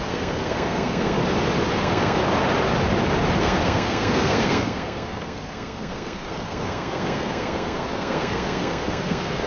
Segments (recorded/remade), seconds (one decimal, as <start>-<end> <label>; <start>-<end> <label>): 0.0-1.2 remade; 1.2-1.7 recorded; 1.7-2.2 remade; 2.2-3.4 recorded; 3.4-9.5 remade